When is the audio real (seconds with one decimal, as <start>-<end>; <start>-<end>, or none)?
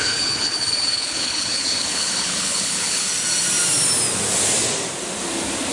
3.1-5.7